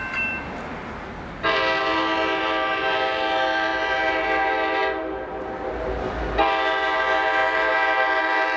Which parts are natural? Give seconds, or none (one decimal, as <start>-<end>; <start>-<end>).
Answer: 0.0-8.6